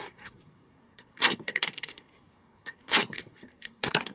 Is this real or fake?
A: fake